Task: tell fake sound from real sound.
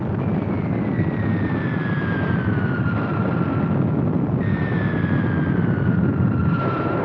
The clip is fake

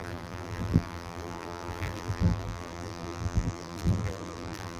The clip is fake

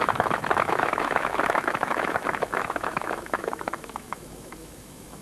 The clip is fake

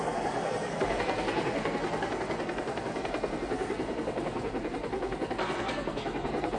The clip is fake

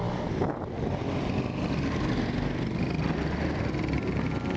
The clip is real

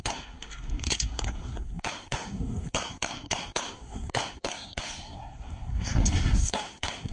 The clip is fake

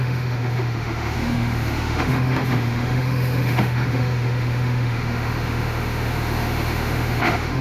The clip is fake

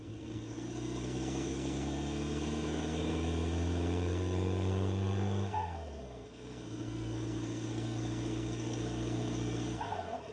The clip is fake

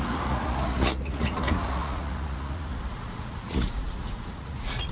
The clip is fake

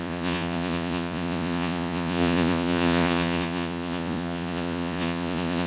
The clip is fake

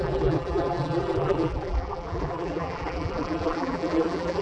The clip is fake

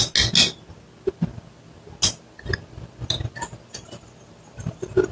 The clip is real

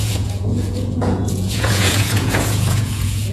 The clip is fake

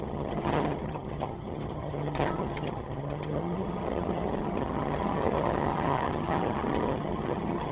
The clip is fake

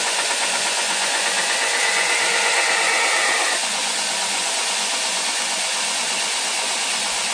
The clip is fake